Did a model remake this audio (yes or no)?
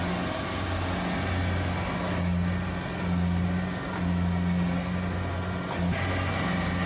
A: no